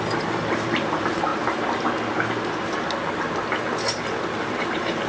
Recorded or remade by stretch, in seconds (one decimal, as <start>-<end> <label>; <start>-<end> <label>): 0.0-1.3 remade; 1.3-4.4 recorded; 4.4-5.1 remade